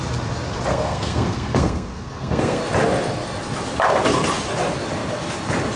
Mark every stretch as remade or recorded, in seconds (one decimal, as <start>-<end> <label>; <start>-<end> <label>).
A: 0.0-0.7 recorded; 0.7-2.6 remade; 2.6-5.8 recorded